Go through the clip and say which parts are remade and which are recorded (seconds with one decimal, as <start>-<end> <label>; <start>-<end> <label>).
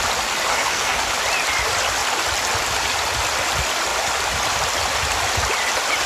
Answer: 0.0-0.5 recorded; 0.5-1.1 remade; 1.1-6.1 recorded